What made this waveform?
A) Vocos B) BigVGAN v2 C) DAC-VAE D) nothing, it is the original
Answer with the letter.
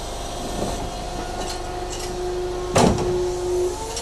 D